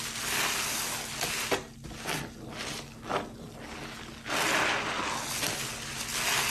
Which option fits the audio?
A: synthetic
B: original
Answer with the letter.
B